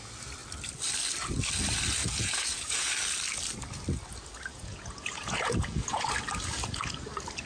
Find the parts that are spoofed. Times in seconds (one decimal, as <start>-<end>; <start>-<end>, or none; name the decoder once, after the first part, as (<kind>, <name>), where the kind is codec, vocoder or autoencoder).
2.0-2.9 (vocoder, Vocos); 4.5-6.1